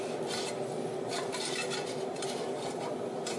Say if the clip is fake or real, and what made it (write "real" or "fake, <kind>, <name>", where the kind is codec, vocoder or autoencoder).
fake, vocoder, BigVGAN v2